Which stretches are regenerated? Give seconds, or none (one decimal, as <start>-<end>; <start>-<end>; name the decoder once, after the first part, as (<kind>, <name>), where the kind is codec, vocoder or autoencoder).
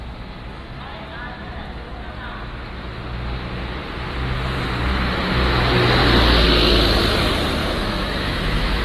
7.6-8.8 (autoencoder, DAC-VAE)